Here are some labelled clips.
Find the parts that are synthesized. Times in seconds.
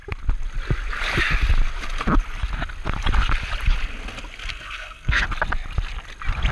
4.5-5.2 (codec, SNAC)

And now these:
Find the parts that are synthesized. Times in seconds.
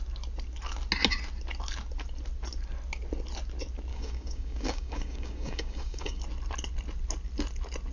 3.9-6.2 (codec, DAC)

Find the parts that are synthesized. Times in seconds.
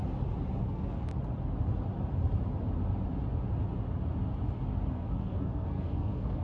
0.6-1.1 (codec, SNAC); 4.9-6.4